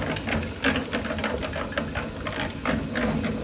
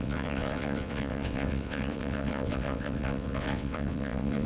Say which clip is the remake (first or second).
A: second